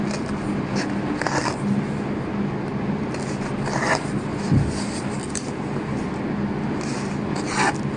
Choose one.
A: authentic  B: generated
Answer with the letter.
A